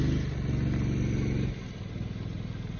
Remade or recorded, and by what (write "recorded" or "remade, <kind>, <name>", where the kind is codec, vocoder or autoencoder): recorded